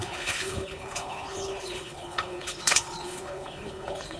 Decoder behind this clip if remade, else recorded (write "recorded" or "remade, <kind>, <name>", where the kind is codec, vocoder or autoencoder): remade, codec, HILCodec